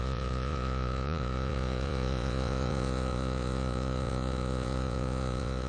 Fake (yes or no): yes